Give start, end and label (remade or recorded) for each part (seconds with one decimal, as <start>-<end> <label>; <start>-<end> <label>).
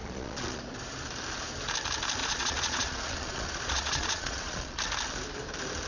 0.0-0.6 remade; 0.6-2.2 recorded; 2.2-4.8 remade; 4.8-5.9 recorded